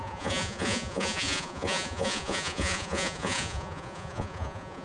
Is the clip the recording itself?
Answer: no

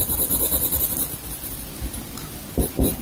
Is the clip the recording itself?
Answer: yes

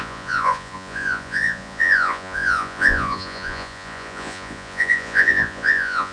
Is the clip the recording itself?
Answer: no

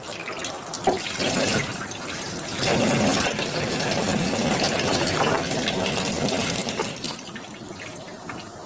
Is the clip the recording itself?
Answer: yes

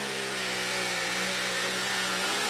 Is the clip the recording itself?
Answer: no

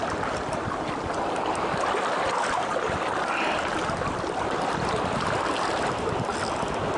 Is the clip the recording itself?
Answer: yes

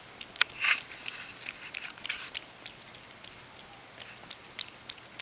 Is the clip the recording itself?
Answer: yes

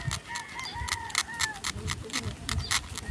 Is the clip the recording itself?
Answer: yes